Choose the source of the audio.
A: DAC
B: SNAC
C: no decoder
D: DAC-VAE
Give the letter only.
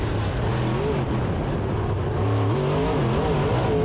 C